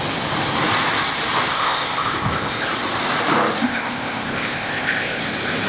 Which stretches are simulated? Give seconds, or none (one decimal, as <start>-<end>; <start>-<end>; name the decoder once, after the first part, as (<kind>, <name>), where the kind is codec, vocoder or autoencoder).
1.5-2.7 (codec, ZipCodec); 3.6-5.2